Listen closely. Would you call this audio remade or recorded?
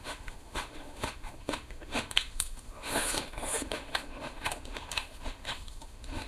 remade